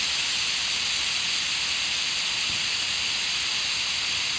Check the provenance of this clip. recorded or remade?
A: recorded